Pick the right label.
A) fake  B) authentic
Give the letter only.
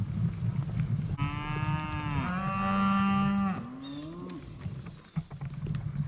B